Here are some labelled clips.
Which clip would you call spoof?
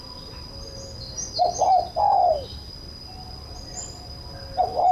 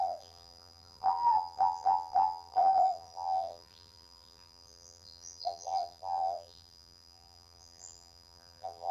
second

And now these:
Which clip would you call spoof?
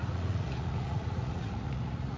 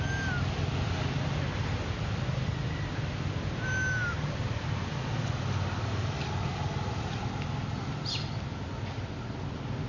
first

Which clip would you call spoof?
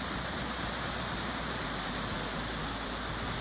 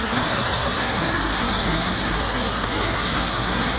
second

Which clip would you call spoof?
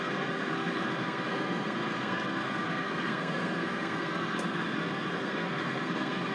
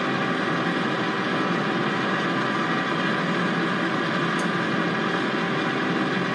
first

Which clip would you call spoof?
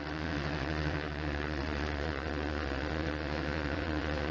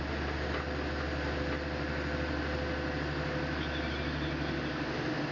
first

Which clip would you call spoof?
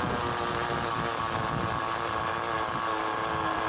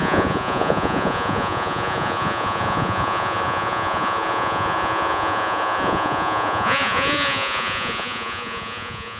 second